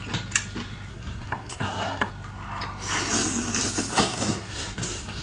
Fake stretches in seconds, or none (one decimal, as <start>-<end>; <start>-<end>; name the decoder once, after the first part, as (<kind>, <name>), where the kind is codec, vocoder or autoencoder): 0.9-2.1 (codec, SNAC); 3.9-5.2